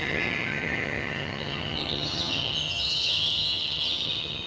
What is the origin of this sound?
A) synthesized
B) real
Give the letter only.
A